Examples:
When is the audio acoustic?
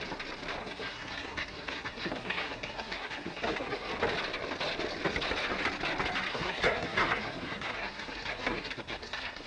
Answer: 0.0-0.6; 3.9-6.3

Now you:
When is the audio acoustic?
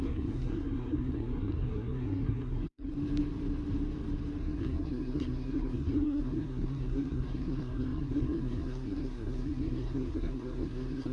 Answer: 2.9-4.4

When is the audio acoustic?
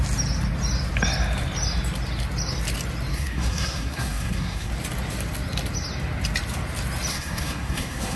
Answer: 0.0-3.1; 4.7-7.1